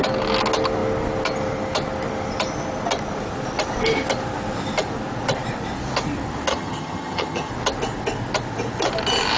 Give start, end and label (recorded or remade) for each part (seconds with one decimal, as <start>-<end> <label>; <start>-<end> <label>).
0.0-6.5 recorded; 6.5-7.5 remade; 7.5-9.4 recorded